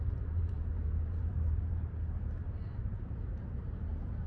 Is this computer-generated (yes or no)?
yes